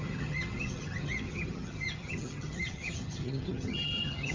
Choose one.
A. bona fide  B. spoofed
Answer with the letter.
B